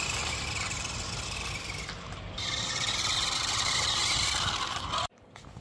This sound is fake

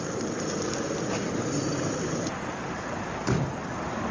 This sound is fake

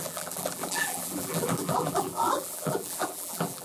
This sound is fake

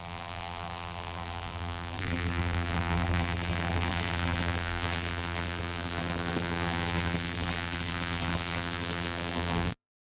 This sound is fake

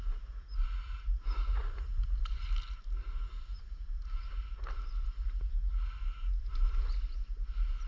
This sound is real